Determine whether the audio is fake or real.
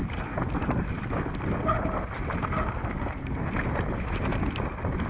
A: real